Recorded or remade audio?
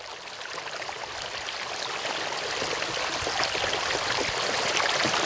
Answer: recorded